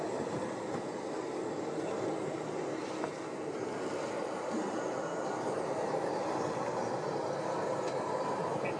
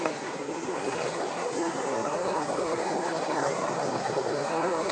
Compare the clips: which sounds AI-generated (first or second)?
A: second